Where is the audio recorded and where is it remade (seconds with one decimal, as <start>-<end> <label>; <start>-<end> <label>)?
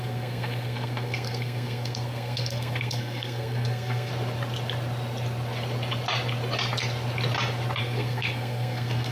0.0-4.1 remade; 4.1-7.8 recorded; 7.8-9.1 remade